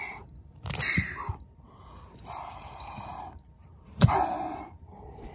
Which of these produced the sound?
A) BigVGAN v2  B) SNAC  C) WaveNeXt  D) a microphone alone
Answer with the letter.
A